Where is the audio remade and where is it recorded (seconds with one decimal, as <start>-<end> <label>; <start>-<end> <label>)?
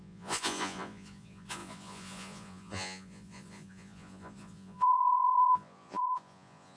0.0-6.8 remade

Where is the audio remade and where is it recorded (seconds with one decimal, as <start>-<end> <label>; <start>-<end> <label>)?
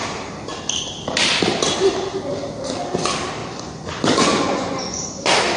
0.0-3.4 recorded; 3.4-5.0 remade; 5.0-5.6 recorded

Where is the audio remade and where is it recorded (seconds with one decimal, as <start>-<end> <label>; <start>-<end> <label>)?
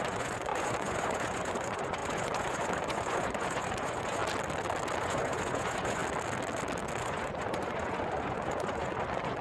0.0-4.2 remade; 4.2-5.0 recorded; 5.0-6.0 remade; 6.0-7.0 recorded; 7.0-9.4 remade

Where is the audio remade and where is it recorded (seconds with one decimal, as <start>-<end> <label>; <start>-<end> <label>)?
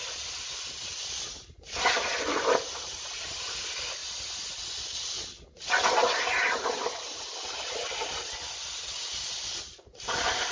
0.0-10.5 recorded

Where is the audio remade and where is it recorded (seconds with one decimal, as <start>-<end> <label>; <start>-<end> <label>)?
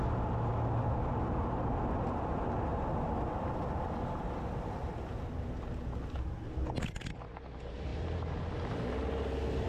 0.0-9.7 recorded